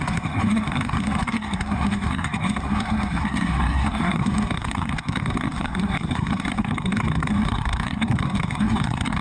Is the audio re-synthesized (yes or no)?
yes